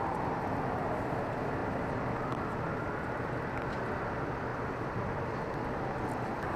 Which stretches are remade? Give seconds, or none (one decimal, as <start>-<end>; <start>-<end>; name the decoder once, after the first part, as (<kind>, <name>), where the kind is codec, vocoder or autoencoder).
none